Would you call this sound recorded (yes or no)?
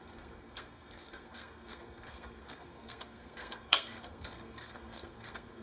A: no